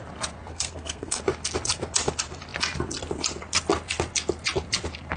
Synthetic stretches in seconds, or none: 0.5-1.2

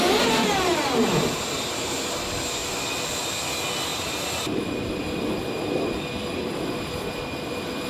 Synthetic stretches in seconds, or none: 0.4-2.1; 3.9-4.9